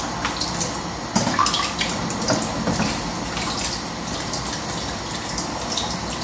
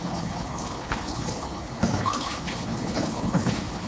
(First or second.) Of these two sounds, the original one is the first